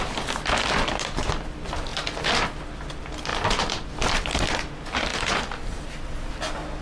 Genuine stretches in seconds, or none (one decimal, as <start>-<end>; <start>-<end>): 0.0-3.3; 3.9-5.1; 6.3-6.8